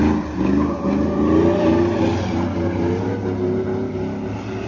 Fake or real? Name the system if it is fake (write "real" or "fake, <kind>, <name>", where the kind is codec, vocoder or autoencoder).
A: real